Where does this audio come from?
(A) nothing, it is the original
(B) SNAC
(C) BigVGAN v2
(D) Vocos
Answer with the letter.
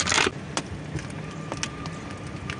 A